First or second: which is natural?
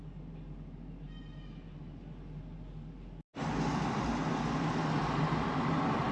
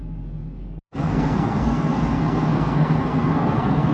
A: first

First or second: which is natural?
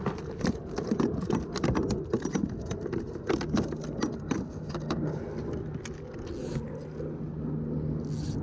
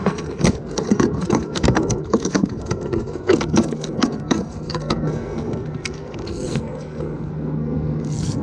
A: first